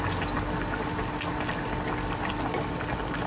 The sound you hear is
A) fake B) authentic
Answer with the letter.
B